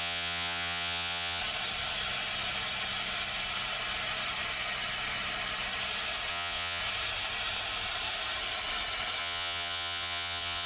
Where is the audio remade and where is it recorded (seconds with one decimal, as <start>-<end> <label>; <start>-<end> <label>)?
0.0-1.4 remade; 1.4-6.3 recorded; 6.3-6.8 remade; 6.8-9.2 recorded; 9.2-10.7 remade